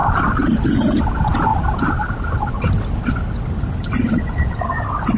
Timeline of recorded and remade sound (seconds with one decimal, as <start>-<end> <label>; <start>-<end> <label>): 0.0-5.2 recorded